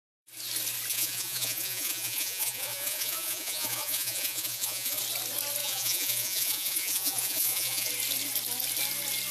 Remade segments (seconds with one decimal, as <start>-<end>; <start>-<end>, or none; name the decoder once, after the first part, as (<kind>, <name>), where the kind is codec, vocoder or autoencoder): 0.9-5.0 (vocoder, Vocos); 5.6-7.9